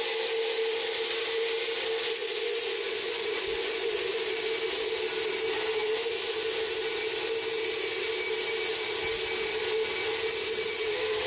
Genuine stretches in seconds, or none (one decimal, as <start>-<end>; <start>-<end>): 0.0-2.2; 4.2-11.3